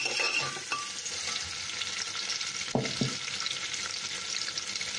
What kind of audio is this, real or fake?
real